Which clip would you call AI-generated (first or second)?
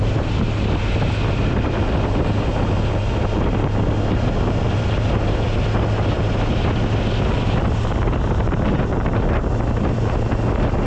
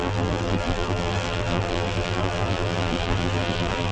second